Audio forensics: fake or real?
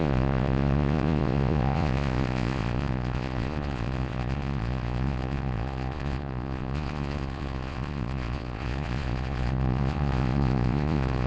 fake